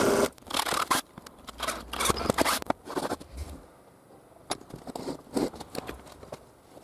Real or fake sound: real